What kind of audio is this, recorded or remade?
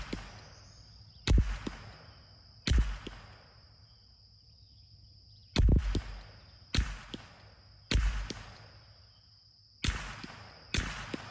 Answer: recorded